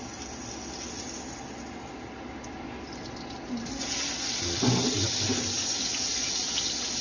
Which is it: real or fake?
real